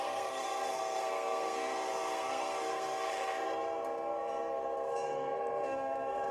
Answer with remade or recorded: remade